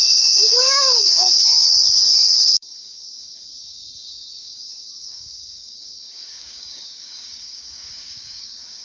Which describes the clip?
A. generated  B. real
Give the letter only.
A